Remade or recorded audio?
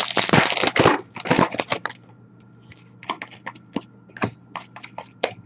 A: recorded